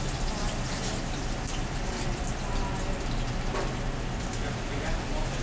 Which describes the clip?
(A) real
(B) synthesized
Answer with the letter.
A